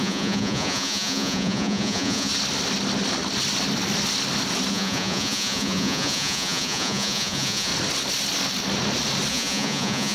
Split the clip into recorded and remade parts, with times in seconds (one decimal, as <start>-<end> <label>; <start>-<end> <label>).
0.0-2.3 remade; 2.3-4.7 recorded; 4.7-7.7 remade; 7.7-9.3 recorded; 9.3-10.1 remade